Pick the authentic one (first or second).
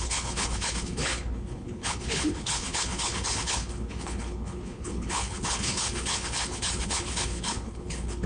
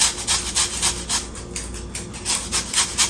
second